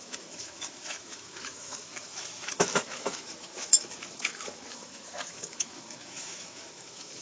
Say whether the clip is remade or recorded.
remade